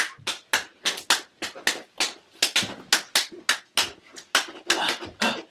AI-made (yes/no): no